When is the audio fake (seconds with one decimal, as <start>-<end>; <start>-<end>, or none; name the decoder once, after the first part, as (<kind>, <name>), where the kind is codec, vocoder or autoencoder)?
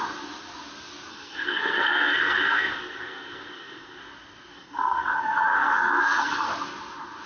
1.1-4.0 (codec, SNAC); 4.5-6.5